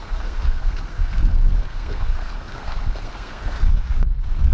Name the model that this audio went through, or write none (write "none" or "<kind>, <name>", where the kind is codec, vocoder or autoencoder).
codec, SNAC